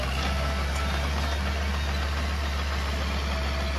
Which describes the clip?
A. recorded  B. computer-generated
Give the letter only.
A